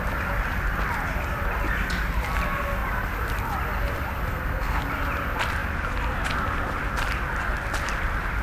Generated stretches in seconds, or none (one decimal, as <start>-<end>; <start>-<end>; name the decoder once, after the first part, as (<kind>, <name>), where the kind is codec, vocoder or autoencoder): 4.3-4.8 (codec, SNAC)